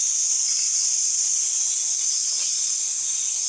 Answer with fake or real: real